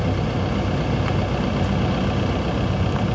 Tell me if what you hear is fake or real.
real